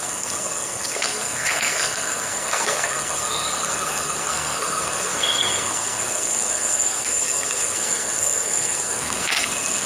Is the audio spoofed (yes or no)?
yes